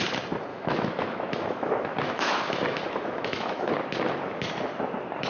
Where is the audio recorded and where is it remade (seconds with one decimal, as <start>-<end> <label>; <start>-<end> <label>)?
0.0-0.5 recorded; 0.5-3.7 remade; 3.7-5.3 recorded